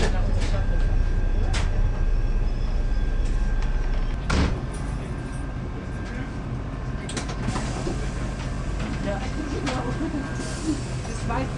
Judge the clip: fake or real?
real